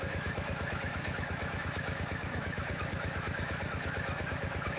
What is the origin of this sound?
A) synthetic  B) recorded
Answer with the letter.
A